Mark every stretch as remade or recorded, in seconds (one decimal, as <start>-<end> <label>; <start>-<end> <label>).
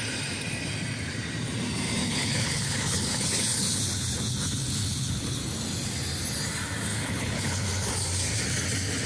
0.0-2.0 recorded; 2.0-5.4 remade; 5.4-6.9 recorded; 6.9-7.9 remade; 7.9-9.1 recorded